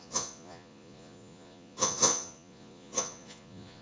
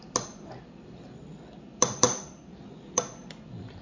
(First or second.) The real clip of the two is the second